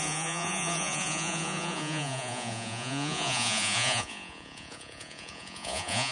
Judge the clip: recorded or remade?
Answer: remade